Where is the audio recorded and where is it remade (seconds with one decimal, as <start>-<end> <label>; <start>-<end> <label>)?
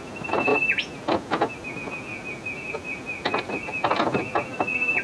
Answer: 0.0-5.0 recorded